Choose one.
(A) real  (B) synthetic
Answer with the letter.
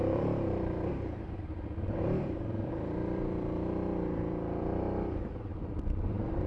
B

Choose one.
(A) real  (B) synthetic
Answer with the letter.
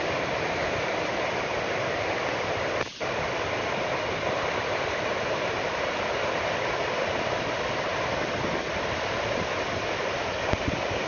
A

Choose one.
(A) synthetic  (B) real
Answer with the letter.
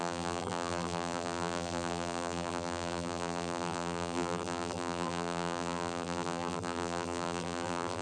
A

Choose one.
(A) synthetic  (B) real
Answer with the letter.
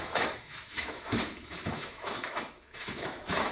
A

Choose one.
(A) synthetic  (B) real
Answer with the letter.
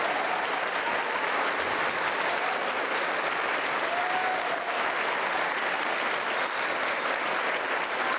B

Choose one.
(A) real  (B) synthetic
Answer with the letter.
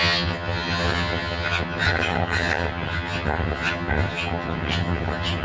B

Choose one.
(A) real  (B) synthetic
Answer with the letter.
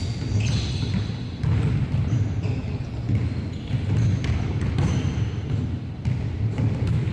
A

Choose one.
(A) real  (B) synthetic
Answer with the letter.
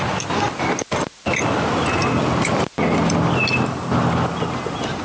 A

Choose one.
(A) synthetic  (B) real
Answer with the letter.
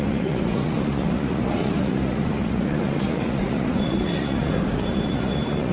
A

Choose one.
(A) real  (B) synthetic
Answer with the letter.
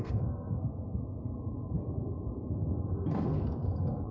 B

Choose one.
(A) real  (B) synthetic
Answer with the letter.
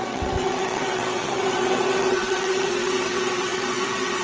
B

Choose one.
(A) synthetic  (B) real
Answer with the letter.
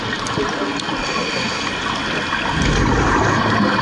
B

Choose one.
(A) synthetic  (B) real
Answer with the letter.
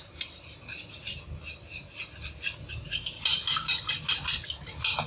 B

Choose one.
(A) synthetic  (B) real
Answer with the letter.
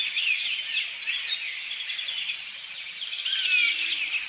B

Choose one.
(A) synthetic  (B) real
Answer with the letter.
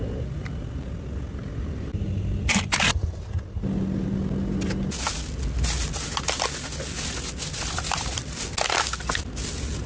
B